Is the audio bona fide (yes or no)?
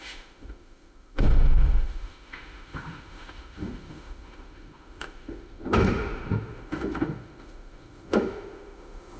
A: no